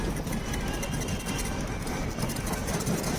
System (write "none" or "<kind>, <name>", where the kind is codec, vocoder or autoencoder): none